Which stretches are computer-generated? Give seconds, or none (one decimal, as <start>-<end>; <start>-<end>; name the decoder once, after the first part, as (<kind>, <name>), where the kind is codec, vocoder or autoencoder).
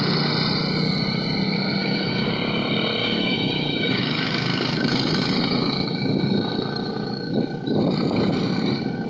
1.8-2.3 (autoencoder, DAC-VAE); 3.0-7.1